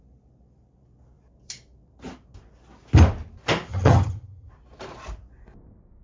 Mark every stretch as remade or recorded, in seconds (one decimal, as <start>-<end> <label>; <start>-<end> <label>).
0.0-3.7 recorded; 3.7-4.5 remade; 4.5-6.0 recorded